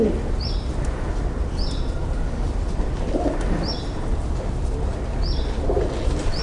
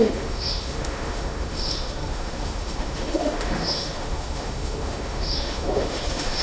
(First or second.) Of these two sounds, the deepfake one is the second